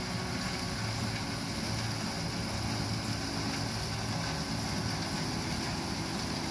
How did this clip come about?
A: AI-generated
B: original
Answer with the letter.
B